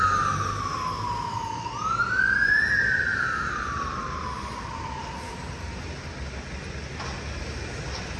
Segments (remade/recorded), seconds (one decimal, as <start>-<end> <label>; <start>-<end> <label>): 0.0-3.1 recorded; 3.1-4.4 remade; 4.4-8.2 recorded